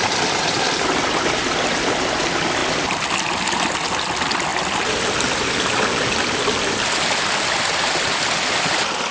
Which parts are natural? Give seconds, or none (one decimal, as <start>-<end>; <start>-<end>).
0.0-9.1